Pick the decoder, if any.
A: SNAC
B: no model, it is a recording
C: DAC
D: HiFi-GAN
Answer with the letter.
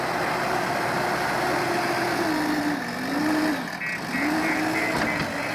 B